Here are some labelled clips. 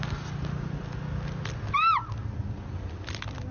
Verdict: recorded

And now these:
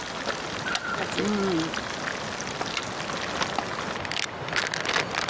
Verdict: recorded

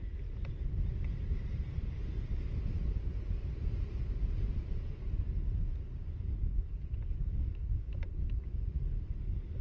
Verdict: recorded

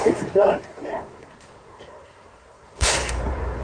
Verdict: remade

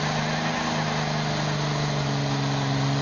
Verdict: recorded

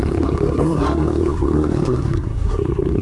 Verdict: remade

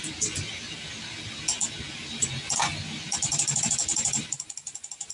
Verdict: recorded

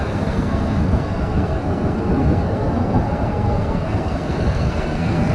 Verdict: remade